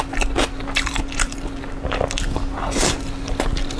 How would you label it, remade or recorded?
recorded